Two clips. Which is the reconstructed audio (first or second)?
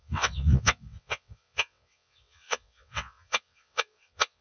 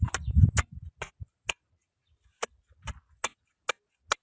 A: first